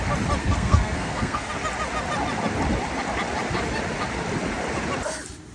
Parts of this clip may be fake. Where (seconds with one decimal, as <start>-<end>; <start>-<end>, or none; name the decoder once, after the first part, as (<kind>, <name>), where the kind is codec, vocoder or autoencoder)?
0.4-1.5 (codec, SNAC)